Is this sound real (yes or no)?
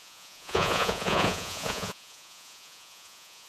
no